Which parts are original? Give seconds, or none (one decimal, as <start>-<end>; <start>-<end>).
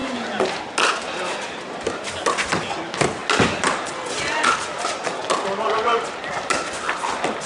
0.0-7.5